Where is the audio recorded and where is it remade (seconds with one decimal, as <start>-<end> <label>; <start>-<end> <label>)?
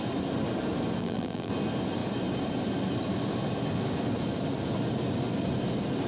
0.0-1.0 recorded; 1.0-1.5 remade; 1.5-6.1 recorded